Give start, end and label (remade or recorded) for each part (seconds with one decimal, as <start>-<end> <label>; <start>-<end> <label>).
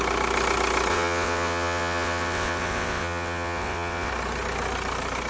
0.0-0.9 recorded; 0.9-4.1 remade; 4.1-5.3 recorded